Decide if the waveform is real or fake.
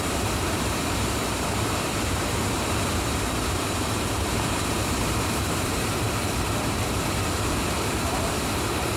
fake